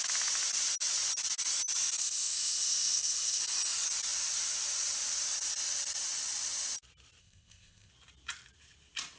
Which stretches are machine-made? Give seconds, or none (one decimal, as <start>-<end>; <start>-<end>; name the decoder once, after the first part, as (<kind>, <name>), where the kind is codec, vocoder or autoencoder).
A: 2.0-3.4 (codec, ZipCodec); 7.2-7.9